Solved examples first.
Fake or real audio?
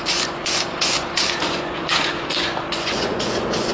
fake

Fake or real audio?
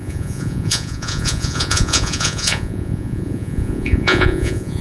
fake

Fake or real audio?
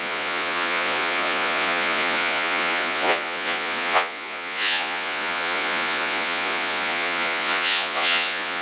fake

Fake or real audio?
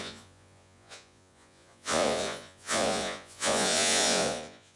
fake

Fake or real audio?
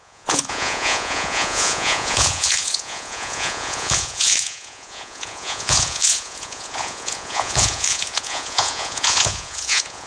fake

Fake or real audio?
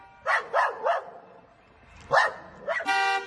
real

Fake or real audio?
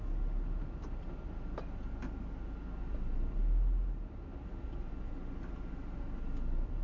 real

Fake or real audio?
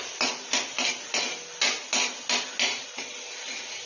real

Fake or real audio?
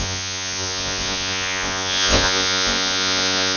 fake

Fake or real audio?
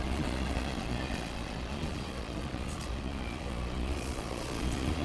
fake